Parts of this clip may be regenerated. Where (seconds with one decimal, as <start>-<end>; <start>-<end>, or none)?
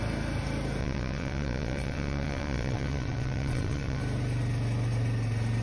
0.8-4.0